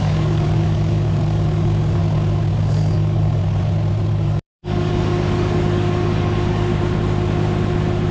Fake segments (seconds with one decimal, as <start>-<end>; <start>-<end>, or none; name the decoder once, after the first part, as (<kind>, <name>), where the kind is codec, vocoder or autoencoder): 0.0-2.0 (codec, DAC); 2.6-3.4; 4.1-6.7